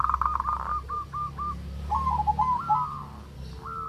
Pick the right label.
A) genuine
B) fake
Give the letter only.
A